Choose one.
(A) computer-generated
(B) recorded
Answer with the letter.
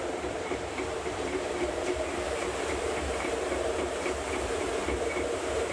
A